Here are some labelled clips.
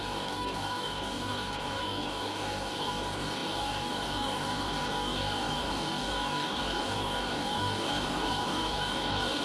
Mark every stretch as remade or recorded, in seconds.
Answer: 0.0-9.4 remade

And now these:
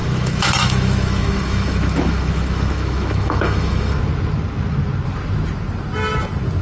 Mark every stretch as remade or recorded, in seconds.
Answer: 0.0-4.0 remade; 4.0-6.6 recorded